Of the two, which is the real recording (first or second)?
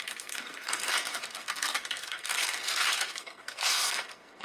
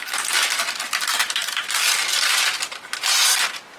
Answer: second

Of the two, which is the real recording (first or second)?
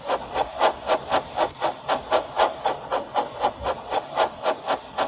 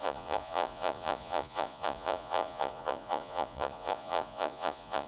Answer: first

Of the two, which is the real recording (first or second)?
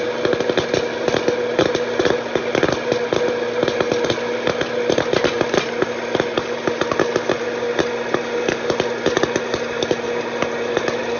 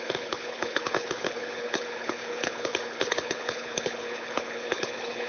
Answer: first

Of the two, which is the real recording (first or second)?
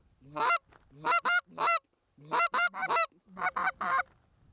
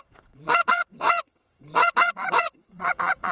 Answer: first